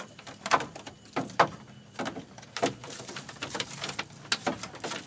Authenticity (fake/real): real